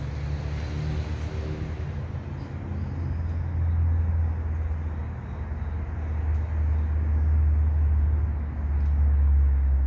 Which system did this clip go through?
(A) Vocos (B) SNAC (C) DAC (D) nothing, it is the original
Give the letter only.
D